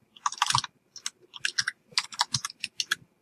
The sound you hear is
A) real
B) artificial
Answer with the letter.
A